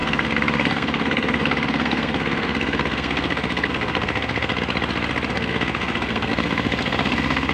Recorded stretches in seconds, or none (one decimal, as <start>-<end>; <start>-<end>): 4.5-5.3

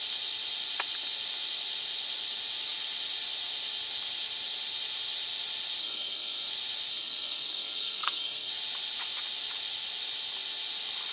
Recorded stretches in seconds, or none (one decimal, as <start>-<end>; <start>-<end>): 0.0-5.8; 6.5-6.9; 8.5-11.1

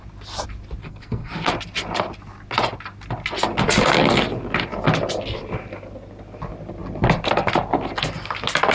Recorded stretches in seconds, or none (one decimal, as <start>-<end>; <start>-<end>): 0.0-0.8; 1.5-8.7

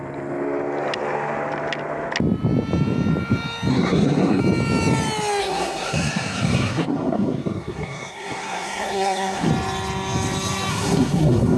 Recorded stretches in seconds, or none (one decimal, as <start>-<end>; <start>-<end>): 0.0-3.7; 4.4-5.4; 9.5-10.7

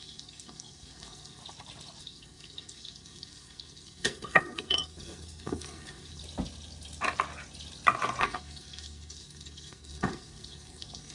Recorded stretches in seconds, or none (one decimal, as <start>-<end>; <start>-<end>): 1.4-2.0; 6.2-8.2

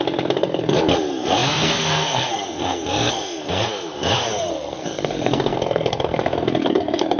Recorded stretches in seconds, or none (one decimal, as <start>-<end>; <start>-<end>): none

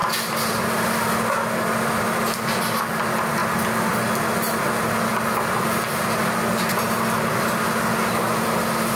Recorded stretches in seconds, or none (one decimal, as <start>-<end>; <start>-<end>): 0.0-9.0